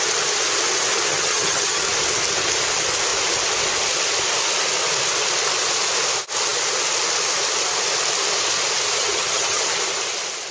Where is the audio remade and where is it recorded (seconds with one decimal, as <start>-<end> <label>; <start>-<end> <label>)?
0.0-1.1 recorded; 1.1-1.8 remade; 1.8-9.0 recorded; 9.0-9.6 remade; 9.6-10.5 recorded